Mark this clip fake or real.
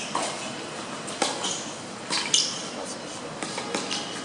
real